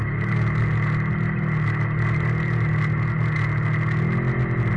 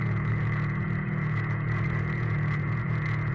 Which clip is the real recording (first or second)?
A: first